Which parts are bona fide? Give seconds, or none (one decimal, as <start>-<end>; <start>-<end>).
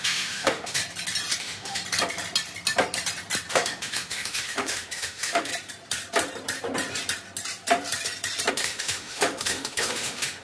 0.8-1.4; 1.8-3.5; 5.5-8.5